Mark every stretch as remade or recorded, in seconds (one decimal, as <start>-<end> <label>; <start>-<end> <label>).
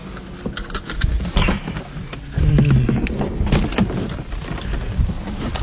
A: 0.0-5.6 recorded